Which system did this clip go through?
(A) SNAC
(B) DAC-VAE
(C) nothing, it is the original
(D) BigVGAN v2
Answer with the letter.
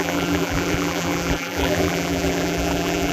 D